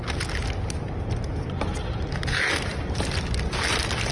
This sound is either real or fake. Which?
real